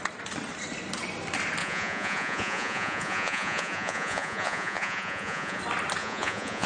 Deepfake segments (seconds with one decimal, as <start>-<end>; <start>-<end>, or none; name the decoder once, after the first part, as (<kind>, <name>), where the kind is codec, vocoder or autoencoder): 1.6-5.6 (vocoder, Vocos); 6.0-6.7